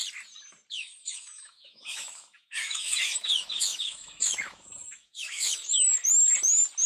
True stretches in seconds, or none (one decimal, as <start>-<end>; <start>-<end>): 0.0-0.7; 5.9-6.9